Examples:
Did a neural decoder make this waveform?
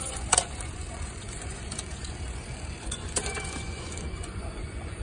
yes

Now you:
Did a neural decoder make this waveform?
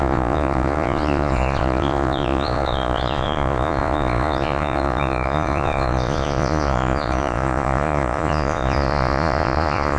yes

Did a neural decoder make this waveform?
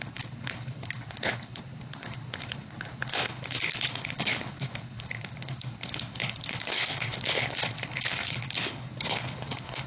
yes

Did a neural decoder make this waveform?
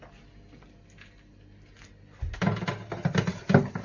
no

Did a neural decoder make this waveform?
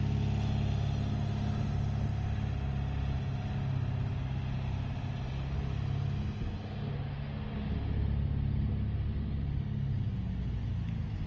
no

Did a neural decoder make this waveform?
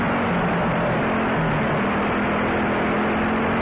no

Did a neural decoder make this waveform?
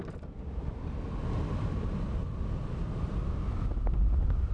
no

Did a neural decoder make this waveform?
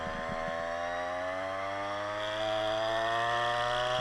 no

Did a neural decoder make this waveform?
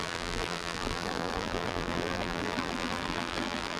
yes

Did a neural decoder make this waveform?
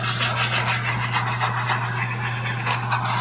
no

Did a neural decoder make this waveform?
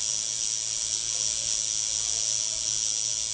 no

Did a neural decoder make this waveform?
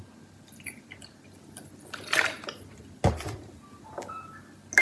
no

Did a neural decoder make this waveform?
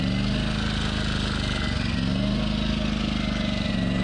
no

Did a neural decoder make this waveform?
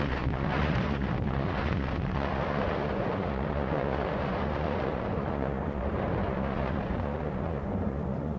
yes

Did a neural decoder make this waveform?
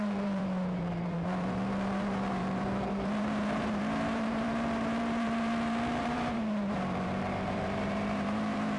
yes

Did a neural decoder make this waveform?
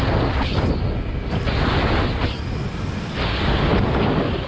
no